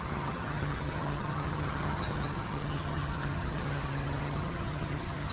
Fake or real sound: fake